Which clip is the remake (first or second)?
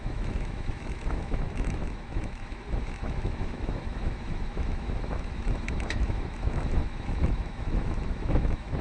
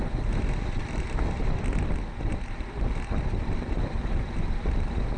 first